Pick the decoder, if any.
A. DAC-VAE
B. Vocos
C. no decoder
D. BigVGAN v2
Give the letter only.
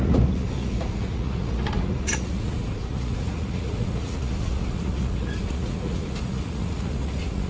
B